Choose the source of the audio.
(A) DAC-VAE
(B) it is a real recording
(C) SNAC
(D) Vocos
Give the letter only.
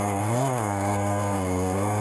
C